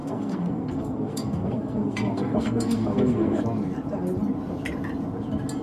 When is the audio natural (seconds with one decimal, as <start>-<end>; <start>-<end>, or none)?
3.4-5.6